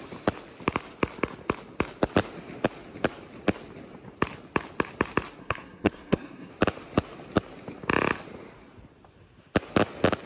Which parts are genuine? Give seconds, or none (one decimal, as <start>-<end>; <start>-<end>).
0.0-5.4; 6.5-10.3